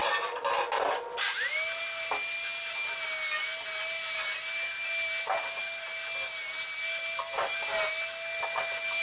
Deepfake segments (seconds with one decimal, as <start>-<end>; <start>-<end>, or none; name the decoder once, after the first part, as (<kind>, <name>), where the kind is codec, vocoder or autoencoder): none